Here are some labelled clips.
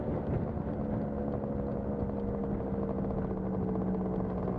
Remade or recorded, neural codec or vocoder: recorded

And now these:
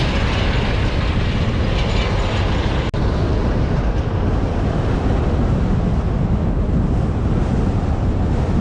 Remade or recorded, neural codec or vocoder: recorded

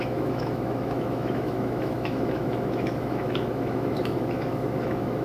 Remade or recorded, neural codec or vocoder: remade, autoencoder, DAC-VAE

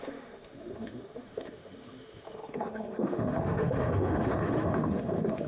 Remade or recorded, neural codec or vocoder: remade, autoencoder, DAC-VAE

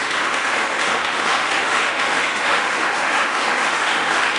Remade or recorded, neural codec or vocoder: remade, autoencoder, DAC-VAE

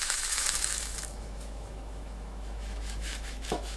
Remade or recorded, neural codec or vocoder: remade, autoencoder, DAC-VAE